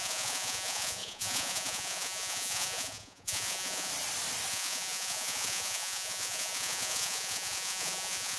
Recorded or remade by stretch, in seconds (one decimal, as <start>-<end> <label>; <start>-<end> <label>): 0.0-3.9 remade; 3.9-4.5 recorded; 4.5-8.4 remade